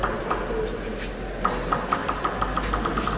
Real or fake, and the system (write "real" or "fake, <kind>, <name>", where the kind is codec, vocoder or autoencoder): real